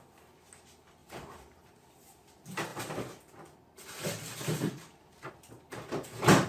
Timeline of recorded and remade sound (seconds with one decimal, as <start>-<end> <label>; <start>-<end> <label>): 0.0-6.5 recorded